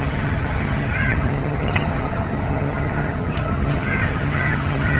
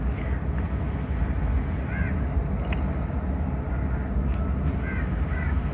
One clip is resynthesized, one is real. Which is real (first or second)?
second